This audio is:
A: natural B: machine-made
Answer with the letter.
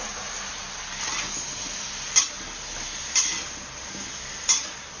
A